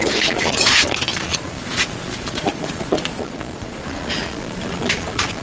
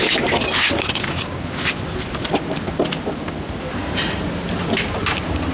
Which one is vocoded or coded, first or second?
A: first